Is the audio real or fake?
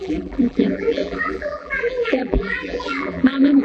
fake